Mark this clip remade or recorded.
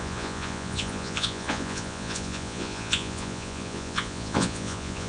remade